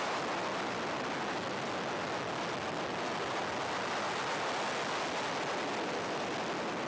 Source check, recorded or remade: recorded